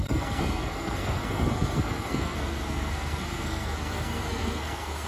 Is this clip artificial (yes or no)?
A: yes